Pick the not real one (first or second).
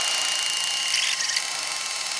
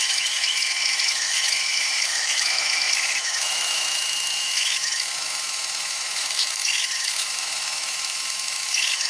second